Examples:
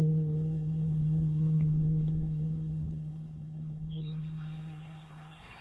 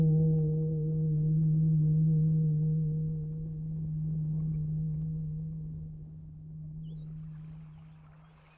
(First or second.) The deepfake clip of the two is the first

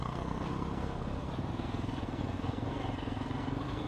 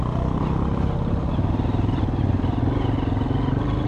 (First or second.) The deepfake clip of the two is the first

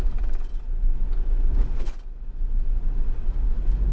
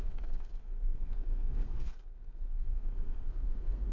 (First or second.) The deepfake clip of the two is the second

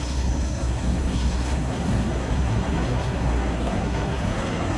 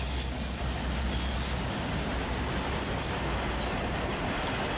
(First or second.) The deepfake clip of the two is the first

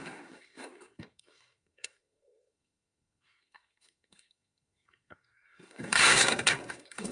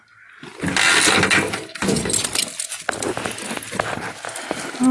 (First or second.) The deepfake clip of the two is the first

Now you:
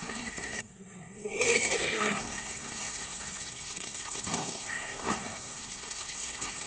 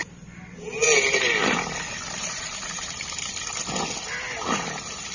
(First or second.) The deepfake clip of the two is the first